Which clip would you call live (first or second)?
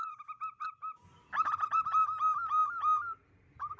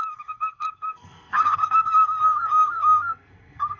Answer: first